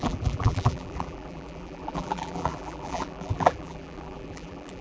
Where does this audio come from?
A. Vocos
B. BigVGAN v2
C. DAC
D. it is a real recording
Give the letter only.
B